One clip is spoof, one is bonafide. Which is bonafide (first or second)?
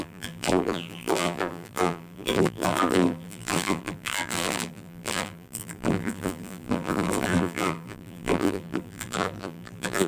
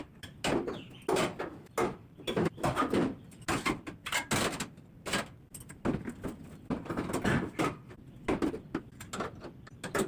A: second